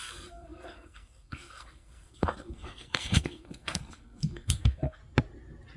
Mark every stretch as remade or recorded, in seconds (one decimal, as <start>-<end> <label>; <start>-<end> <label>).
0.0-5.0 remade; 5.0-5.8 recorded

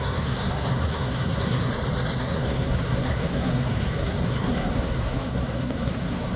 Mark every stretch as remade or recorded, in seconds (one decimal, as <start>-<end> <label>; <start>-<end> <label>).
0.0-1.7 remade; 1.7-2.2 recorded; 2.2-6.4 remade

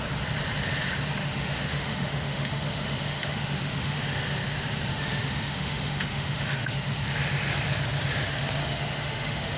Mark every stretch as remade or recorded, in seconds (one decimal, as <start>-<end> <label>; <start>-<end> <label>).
0.0-1.2 recorded; 1.2-4.0 remade; 4.0-4.9 recorded; 4.9-7.0 remade; 7.0-8.6 recorded; 8.6-9.6 remade

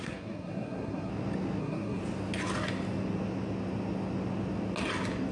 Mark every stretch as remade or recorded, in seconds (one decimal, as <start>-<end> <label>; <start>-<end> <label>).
0.0-1.1 remade; 1.1-1.6 recorded; 1.6-2.0 remade; 2.0-5.3 recorded